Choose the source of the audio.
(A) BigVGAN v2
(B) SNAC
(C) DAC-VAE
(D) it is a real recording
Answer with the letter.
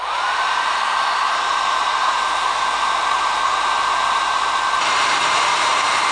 A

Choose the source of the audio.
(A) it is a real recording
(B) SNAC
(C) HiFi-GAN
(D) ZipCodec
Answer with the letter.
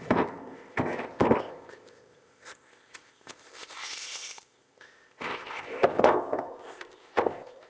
D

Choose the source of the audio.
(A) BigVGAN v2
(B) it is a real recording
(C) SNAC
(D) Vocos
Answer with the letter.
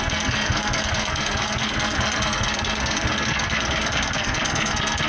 C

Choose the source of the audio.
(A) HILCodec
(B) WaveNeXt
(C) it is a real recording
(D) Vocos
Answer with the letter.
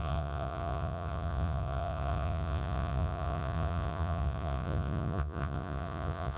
D